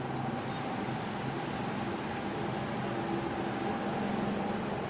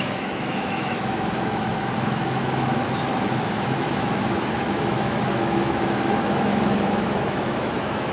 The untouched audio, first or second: first